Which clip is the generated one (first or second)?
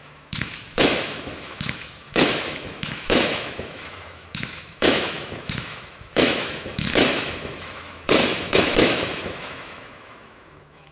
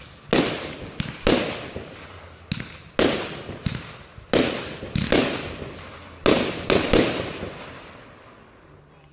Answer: first